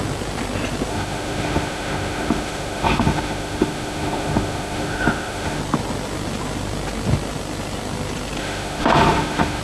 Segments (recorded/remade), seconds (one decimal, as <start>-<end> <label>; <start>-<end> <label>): 0.0-0.9 recorded; 0.9-5.6 remade; 5.6-8.4 recorded; 8.4-9.6 remade